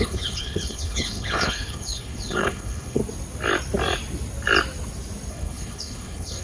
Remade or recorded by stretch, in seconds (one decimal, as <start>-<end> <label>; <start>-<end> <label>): 0.0-3.0 remade; 3.0-5.3 recorded; 5.3-6.4 remade